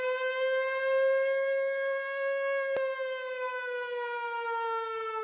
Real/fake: fake